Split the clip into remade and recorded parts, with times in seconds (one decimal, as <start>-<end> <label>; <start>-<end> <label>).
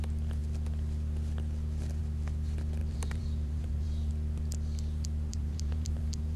0.0-2.8 recorded; 2.8-4.1 remade; 4.1-5.3 recorded; 5.3-6.4 remade